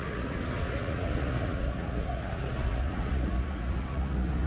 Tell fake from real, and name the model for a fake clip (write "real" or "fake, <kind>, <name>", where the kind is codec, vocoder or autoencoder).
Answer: fake, vocoder, Vocos